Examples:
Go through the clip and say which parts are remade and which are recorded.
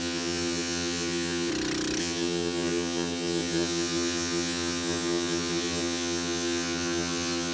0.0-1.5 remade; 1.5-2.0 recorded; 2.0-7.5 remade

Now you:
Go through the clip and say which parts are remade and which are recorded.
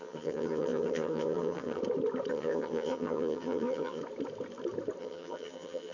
0.0-1.8 remade; 1.8-2.3 recorded; 2.3-4.0 remade; 4.0-5.0 recorded; 5.0-5.9 remade